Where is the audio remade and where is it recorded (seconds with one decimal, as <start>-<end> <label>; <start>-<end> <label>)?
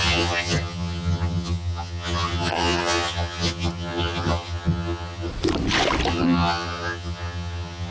0.0-5.3 remade; 5.3-6.1 recorded; 6.1-7.9 remade